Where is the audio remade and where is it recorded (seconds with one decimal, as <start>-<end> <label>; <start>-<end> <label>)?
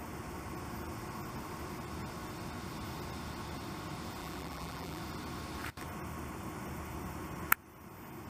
0.0-4.2 recorded; 4.2-5.0 remade; 5.0-8.3 recorded